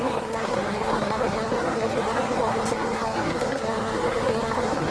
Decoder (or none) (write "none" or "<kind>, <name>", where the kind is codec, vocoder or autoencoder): codec, SNAC